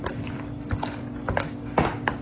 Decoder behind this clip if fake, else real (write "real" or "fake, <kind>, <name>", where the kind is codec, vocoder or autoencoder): real